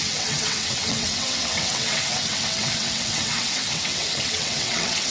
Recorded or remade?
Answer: remade